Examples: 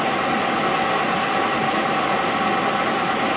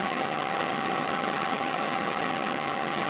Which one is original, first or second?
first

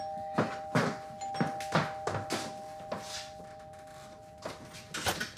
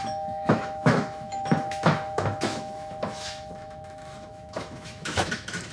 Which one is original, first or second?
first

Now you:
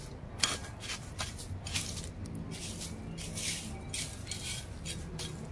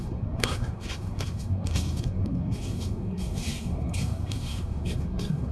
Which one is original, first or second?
first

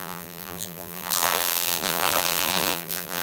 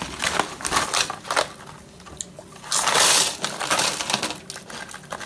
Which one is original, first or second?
second